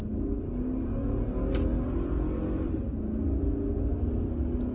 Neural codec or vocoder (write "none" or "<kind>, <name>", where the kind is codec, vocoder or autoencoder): none